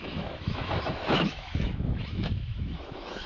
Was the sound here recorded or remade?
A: remade